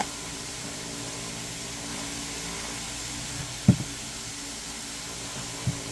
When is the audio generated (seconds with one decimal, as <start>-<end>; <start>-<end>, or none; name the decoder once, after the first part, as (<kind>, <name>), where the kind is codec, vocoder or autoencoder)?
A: 0.0-1.0 (vocoder, BigVGAN v2); 1.9-3.4